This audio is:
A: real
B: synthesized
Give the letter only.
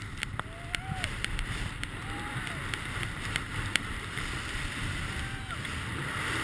B